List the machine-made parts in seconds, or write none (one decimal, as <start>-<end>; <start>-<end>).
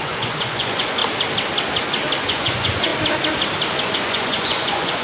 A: 0.0-1.0; 2.2-2.9; 3.8-5.0